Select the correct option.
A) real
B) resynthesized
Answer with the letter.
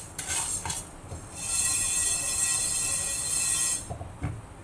A